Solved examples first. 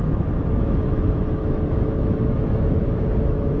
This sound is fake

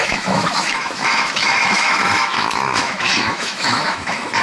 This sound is fake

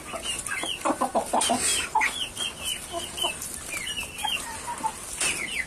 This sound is real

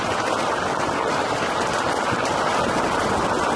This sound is real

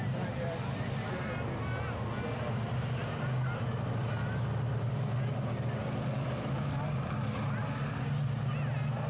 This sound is real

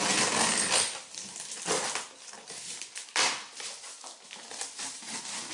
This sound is real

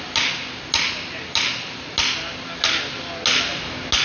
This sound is real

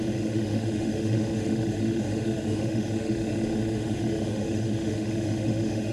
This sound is fake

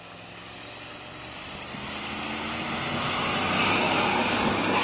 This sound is real